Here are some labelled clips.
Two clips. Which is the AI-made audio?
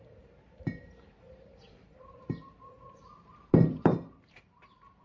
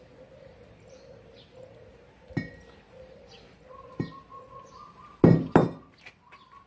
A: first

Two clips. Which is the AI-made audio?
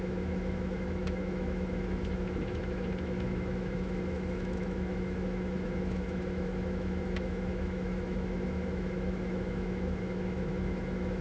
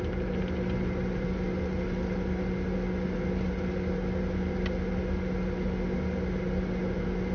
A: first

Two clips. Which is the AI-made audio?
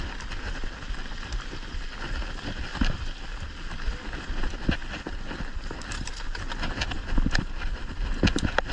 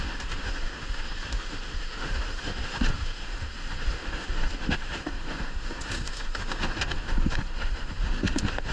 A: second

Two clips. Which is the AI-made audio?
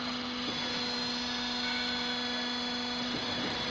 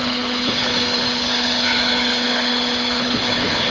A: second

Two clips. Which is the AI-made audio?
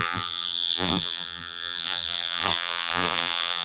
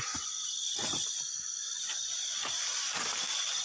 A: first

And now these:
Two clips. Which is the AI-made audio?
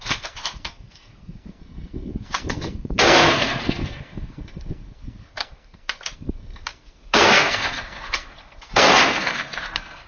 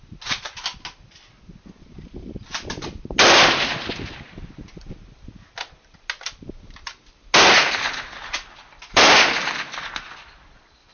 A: first